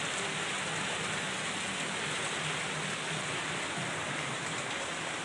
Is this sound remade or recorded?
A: recorded